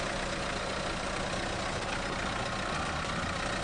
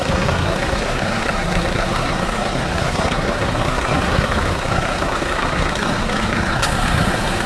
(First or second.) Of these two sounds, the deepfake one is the second